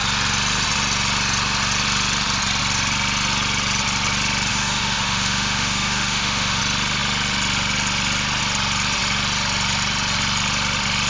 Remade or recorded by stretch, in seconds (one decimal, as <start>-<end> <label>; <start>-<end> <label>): 0.0-4.5 recorded; 4.5-6.6 remade; 6.6-11.1 recorded